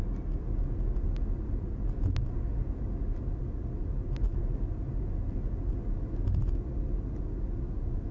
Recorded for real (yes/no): yes